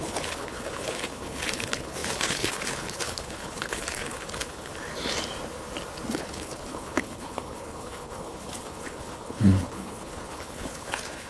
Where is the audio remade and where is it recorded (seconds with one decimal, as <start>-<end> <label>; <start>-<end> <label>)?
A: 0.0-4.7 remade; 4.7-6.1 recorded; 6.1-11.3 remade